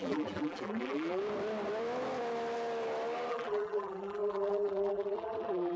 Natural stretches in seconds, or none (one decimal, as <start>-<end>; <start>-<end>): 1.2-3.3